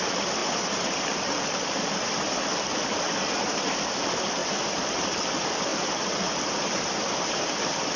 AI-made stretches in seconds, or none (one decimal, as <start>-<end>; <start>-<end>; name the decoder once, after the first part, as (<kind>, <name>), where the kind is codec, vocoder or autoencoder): 0.0-0.4 (vocoder, BigVGAN v2); 1.1-8.0